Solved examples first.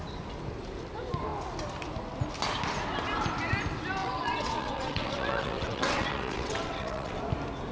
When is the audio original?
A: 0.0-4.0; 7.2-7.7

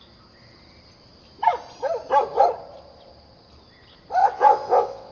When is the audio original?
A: 0.0-4.2

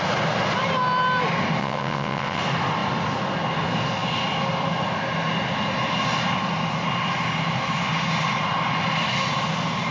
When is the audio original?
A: 0.0-1.6; 2.4-9.9